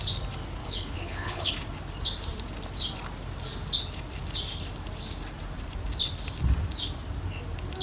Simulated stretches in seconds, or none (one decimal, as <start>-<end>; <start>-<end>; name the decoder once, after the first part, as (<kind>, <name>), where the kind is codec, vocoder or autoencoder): 0.6-1.5 (codec, HILCodec)